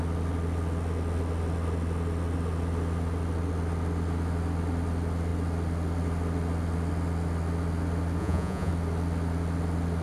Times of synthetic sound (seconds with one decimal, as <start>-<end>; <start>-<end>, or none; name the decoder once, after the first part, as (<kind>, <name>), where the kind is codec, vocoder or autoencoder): 8.2-8.7 (vocoder, Vocos)

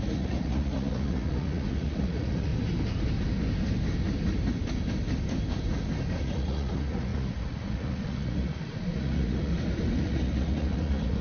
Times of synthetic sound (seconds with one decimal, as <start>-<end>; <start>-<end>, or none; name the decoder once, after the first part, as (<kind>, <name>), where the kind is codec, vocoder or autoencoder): 0.0-2.5 (vocoder, Vocos); 6.2-9.5; 10.0-11.2

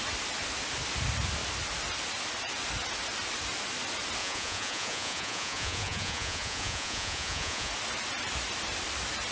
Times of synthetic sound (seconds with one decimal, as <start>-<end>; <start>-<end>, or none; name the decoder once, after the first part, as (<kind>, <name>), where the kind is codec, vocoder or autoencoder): 4.2-7.7 (vocoder, Vocos)

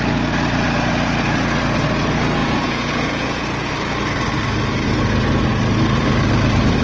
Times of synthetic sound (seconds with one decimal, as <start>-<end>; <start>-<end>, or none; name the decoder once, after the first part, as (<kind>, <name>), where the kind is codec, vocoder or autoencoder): 2.4-3.7 (vocoder, Vocos)

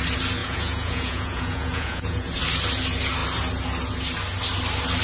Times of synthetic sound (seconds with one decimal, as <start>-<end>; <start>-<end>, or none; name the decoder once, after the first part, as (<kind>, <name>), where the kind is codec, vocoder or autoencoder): 0.4-2.4 (vocoder, Vocos)